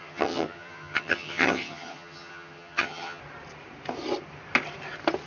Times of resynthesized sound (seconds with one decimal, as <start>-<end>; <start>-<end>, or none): 0.0-3.2